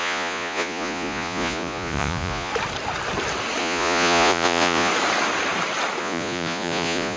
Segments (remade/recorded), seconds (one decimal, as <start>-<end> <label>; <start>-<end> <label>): 0.0-2.5 remade; 2.5-3.6 recorded; 3.6-4.9 remade; 4.9-6.0 recorded; 6.0-7.2 remade